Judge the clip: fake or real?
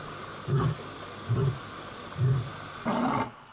real